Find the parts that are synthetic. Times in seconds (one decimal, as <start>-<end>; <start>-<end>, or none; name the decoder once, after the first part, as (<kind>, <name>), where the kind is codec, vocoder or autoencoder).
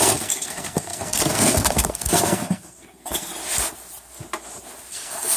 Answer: 0.0-3.3 (codec, SNAC); 4.9-5.4